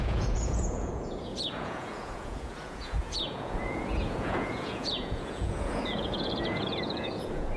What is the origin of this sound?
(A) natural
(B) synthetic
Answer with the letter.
B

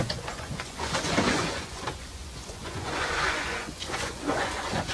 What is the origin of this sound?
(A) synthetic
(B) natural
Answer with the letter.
A